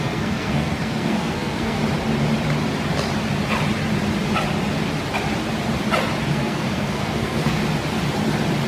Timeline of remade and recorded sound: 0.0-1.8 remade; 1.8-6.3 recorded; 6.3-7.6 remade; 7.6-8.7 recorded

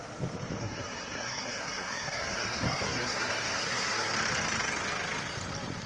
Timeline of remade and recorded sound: 0.0-0.6 recorded; 0.6-4.1 remade; 4.1-5.9 recorded

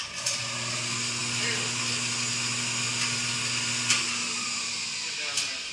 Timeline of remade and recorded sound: 0.0-5.7 recorded

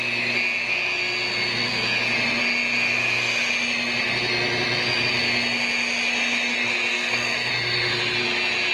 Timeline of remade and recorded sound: 0.0-6.9 recorded; 6.9-7.5 remade; 7.5-8.7 recorded

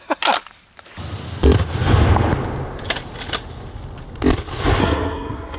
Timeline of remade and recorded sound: 0.0-4.8 recorded; 4.8-5.6 remade

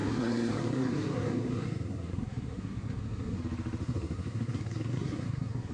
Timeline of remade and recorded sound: 0.0-3.4 remade; 3.4-3.8 recorded; 3.8-5.7 remade

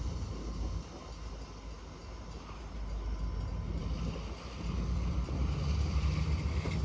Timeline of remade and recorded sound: 0.0-6.8 recorded

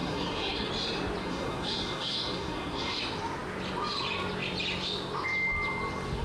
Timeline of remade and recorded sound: 0.0-0.7 remade; 0.7-1.2 recorded; 1.2-3.0 remade; 3.0-6.2 recorded